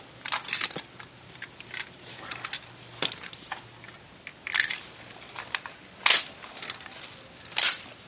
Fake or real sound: real